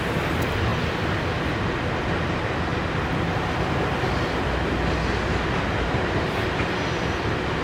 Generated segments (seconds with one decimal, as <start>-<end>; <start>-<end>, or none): none

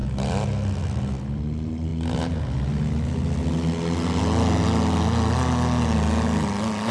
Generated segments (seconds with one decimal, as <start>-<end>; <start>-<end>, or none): none

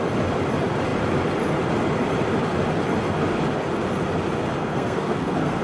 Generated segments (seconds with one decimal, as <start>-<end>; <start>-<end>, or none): 4.6-5.6